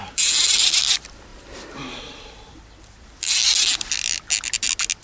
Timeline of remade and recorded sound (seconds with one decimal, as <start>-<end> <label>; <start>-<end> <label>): 0.0-3.4 remade; 3.4-5.0 recorded

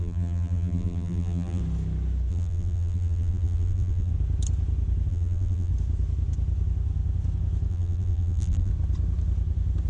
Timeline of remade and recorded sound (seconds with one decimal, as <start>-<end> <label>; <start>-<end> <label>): 0.0-1.6 remade; 1.6-2.3 recorded; 2.3-4.1 remade; 4.1-5.1 recorded; 5.1-5.7 remade; 5.7-7.7 recorded; 7.7-8.7 remade; 8.7-9.9 recorded